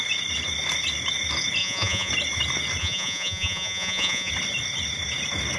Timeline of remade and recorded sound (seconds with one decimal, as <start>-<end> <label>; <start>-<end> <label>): 0.0-1.6 recorded; 1.6-2.1 remade; 2.1-2.8 recorded; 2.8-4.3 remade; 4.3-5.6 recorded